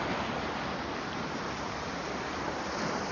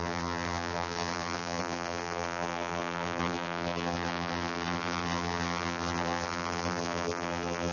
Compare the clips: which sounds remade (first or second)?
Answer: second